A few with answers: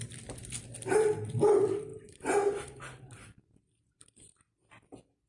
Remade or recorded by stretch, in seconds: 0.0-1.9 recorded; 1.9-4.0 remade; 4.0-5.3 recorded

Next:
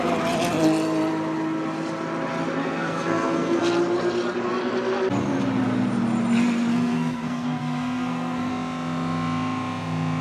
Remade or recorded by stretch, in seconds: 0.0-2.6 recorded; 2.6-3.6 remade; 3.6-6.7 recorded; 6.7-8.5 remade; 8.5-10.2 recorded

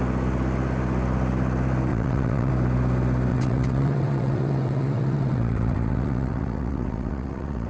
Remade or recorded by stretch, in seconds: 0.0-1.9 recorded; 1.9-2.5 remade; 2.5-3.3 recorded; 3.3-7.7 remade

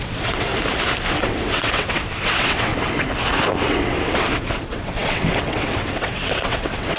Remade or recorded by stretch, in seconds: 0.0-0.5 remade; 0.5-1.1 recorded; 1.1-2.7 remade; 2.7-3.6 recorded; 3.6-7.0 remade

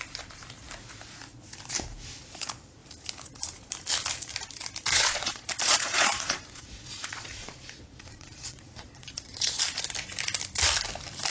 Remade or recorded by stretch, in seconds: 0.0-4.9 recorded; 4.9-9.6 remade; 9.6-11.3 recorded